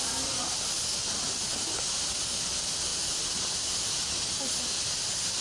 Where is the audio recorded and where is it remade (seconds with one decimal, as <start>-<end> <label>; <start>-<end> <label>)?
0.0-5.4 recorded